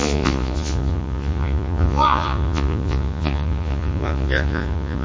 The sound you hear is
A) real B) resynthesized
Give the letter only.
B